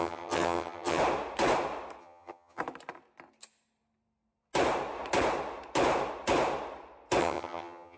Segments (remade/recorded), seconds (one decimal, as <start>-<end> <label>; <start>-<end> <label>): 0.0-1.0 remade; 1.0-2.0 recorded; 2.0-2.6 remade; 2.6-7.2 recorded; 7.2-8.0 remade